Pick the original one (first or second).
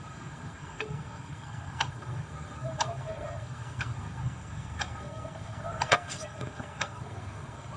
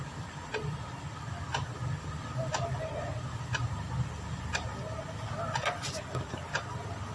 second